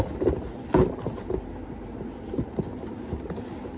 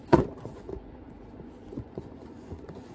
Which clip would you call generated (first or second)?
second